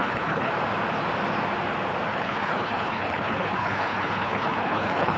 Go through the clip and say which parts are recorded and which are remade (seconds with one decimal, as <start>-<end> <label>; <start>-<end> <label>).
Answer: 0.0-0.5 remade; 0.5-2.1 recorded; 2.1-5.2 remade